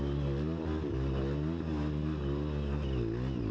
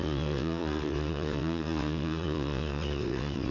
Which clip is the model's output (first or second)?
second